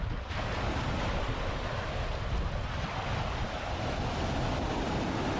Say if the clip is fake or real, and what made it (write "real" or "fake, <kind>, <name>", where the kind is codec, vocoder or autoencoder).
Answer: real